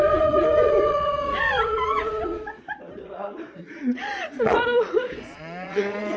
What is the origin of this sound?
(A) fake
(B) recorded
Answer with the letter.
A